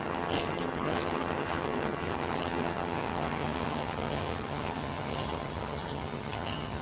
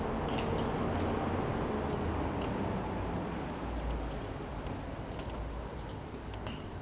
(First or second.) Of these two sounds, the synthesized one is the first